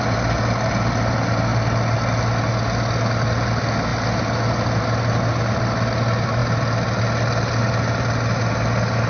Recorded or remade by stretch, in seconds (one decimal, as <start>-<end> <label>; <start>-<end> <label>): 0.0-9.1 recorded